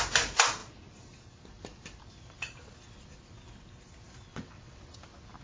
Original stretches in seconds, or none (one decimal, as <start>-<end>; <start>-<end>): 0.0-4.3; 5.0-5.4